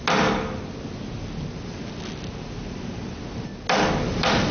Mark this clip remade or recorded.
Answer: recorded